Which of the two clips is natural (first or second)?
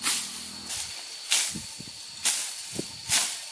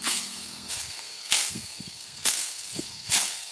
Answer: first